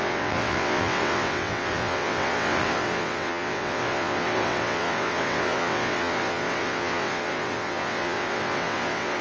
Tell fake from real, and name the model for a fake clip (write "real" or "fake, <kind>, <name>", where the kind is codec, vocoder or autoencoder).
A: fake, vocoder, WaveNeXt